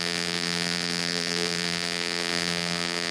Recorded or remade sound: remade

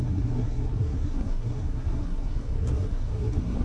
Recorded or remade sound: remade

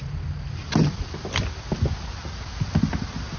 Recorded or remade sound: recorded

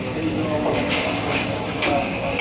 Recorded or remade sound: remade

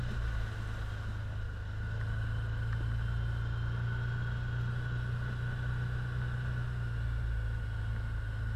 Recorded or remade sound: recorded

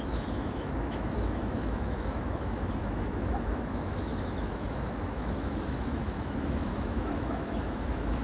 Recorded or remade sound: remade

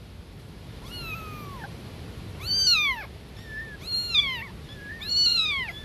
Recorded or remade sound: recorded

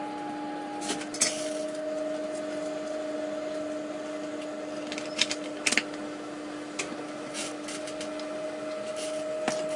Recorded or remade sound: recorded